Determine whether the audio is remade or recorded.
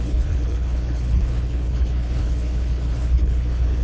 remade